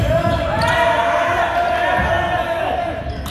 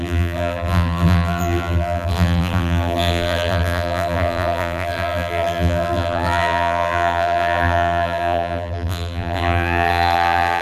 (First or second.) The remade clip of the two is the second